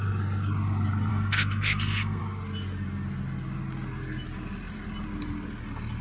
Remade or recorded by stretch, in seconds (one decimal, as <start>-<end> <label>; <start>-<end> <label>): 0.0-1.1 recorded; 1.1-2.2 remade; 2.2-6.0 recorded